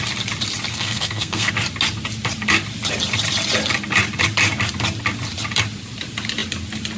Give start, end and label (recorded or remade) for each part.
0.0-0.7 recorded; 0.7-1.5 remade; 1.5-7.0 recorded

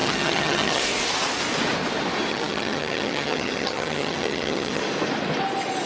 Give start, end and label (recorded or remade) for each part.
0.0-0.8 remade; 0.8-2.3 recorded; 2.3-4.8 remade; 4.8-5.9 recorded

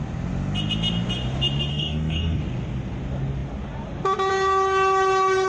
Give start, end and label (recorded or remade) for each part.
0.0-1.7 recorded; 1.7-2.4 remade; 2.4-5.5 recorded

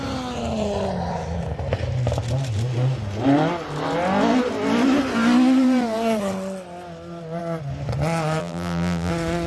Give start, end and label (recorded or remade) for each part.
0.0-8.4 recorded; 8.4-9.1 remade; 9.1-9.5 recorded

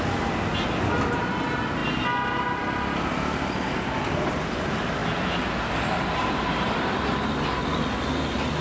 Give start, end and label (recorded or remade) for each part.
0.0-8.6 recorded

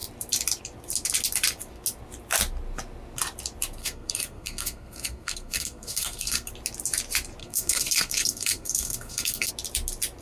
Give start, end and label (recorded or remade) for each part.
0.0-3.8 recorded; 3.8-6.5 remade; 6.5-7.4 recorded; 7.4-9.5 remade; 9.5-10.2 recorded